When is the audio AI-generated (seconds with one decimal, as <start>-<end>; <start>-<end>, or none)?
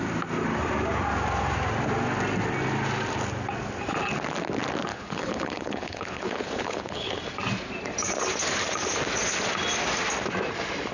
4.9-7.2